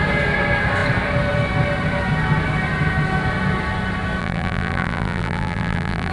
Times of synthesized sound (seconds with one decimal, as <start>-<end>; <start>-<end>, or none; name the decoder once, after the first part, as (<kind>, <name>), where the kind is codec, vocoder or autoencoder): 4.2-6.1 (vocoder, BigVGAN v2)